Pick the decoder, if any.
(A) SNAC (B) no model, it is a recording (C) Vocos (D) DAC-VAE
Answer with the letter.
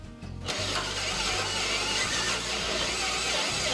B